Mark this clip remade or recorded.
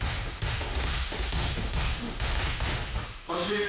remade